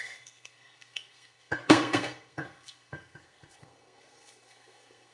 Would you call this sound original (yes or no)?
no